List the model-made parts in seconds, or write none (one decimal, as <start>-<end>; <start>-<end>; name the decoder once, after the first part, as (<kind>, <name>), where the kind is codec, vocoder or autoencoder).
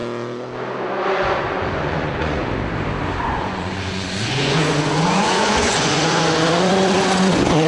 1.1-2.5 (vocoder, Vocos); 3.2-7.7